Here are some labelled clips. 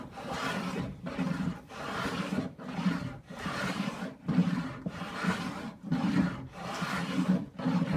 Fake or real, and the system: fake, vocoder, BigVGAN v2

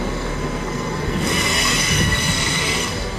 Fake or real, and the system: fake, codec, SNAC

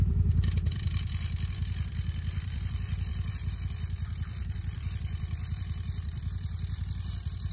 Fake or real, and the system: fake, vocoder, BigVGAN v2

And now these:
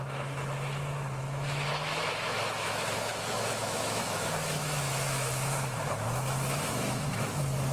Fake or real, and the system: fake, autoencoder, DAC-VAE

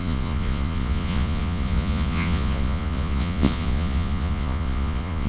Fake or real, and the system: fake, vocoder, Vocos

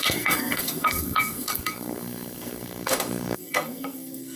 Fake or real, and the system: fake, codec, SNAC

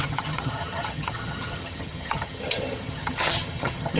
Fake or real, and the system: fake, vocoder, HiFi-GAN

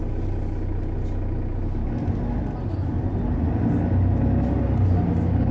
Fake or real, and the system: real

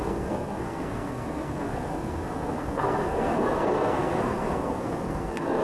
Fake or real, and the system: fake, codec, SNAC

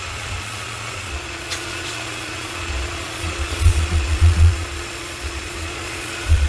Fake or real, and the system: fake, vocoder, Vocos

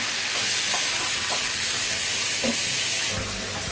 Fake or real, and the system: real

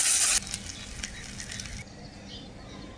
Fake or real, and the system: real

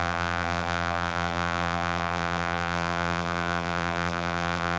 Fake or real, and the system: fake, vocoder, BigVGAN v2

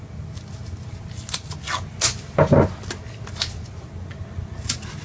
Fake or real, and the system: real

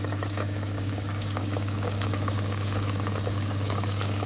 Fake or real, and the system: fake, codec, DAC